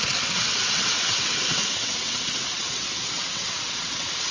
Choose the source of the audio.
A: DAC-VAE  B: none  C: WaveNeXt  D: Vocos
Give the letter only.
C